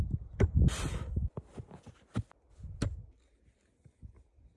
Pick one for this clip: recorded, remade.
recorded